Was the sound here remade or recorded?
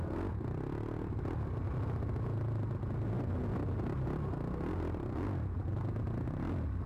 recorded